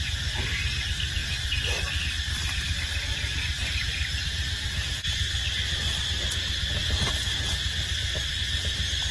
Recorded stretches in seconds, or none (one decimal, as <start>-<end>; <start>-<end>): 0.0-9.1